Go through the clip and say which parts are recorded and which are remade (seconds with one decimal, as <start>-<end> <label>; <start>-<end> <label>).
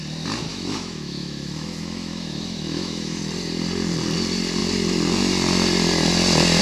0.0-0.5 recorded; 0.5-3.2 remade; 3.2-6.6 recorded